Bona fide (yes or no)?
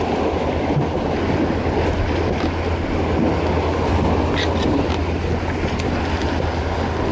yes